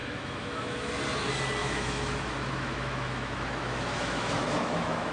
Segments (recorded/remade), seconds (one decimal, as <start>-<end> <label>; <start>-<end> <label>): 0.0-0.9 remade; 0.9-1.6 recorded; 1.6-5.1 remade